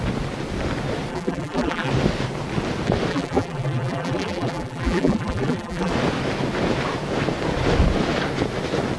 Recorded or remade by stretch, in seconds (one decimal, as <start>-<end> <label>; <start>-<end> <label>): 0.0-1.1 recorded; 1.1-1.9 remade; 1.9-3.1 recorded; 3.1-5.9 remade; 5.9-9.0 recorded